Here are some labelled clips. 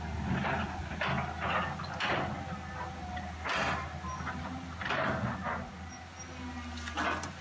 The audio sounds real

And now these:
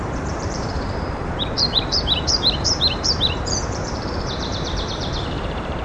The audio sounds fake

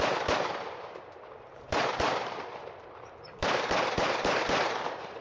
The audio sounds fake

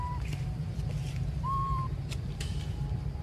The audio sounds fake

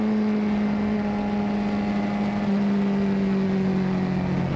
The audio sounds real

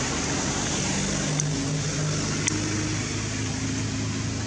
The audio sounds real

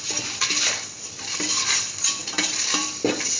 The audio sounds fake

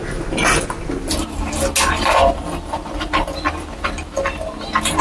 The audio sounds real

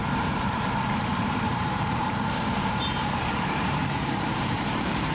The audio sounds fake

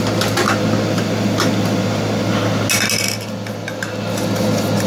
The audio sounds real